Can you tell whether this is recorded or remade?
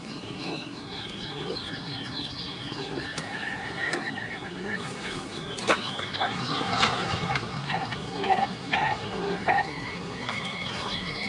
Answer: remade